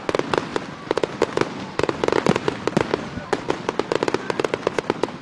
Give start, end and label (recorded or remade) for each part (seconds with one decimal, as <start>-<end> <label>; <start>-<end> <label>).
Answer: 0.0-2.9 recorded; 2.9-3.5 remade; 3.5-5.2 recorded